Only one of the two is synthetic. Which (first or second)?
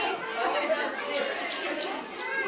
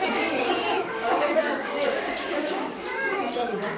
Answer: second